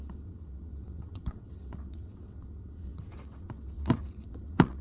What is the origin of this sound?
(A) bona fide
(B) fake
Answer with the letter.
B